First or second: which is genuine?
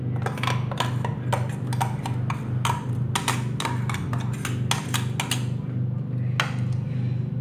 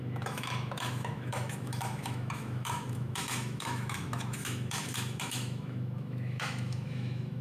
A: first